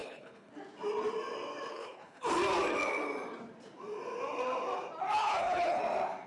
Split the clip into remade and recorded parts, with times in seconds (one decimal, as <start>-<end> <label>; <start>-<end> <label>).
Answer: 0.0-0.5 remade; 0.5-1.7 recorded; 1.7-2.3 remade; 2.3-5.2 recorded; 5.2-5.8 remade; 5.8-6.3 recorded